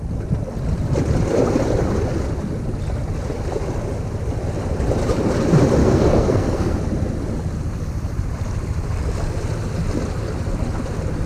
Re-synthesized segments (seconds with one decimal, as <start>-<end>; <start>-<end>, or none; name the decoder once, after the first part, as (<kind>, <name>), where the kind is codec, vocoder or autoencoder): 5.8-6.8 (codec, SNAC)